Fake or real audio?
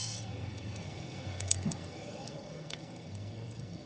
fake